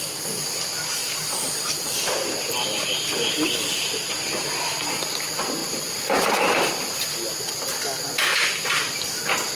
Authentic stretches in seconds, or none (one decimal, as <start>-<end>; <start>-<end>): 0.0-1.0; 3.5-5.6; 7.0-9.5